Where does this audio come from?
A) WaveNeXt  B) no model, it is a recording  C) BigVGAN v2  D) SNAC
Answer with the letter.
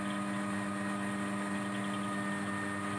B